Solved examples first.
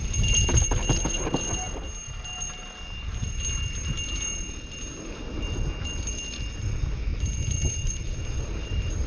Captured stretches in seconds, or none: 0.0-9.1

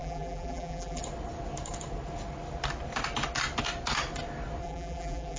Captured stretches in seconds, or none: 1.0-4.6